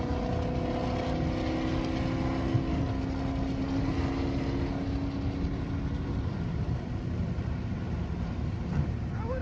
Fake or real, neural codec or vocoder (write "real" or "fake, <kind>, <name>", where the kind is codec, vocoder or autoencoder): real